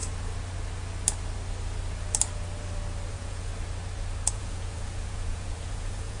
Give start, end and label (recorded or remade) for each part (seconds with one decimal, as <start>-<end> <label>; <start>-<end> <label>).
0.0-3.1 recorded; 3.1-3.5 remade; 3.5-4.3 recorded; 4.3-6.2 remade